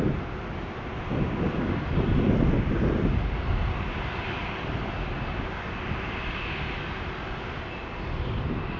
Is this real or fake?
real